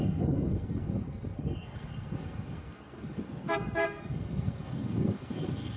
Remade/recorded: remade